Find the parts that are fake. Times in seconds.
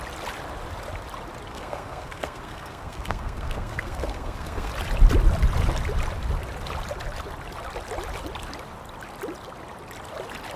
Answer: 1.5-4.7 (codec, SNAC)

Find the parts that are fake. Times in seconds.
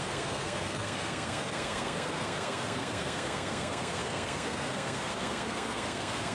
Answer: 0.0-6.3 (codec, SNAC)